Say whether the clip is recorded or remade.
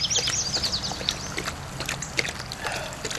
recorded